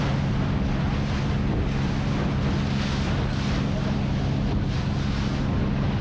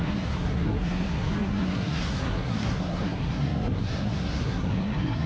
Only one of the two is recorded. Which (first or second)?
first